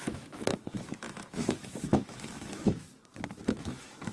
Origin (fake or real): fake